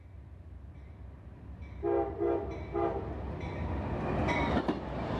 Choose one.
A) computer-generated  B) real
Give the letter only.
B